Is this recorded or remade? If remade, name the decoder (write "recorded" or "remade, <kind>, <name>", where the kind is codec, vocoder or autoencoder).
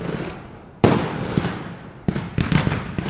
recorded